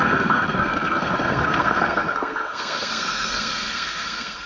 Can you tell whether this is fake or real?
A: fake